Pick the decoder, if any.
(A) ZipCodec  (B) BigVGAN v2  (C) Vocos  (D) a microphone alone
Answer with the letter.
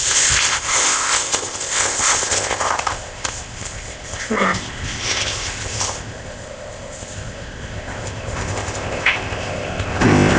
A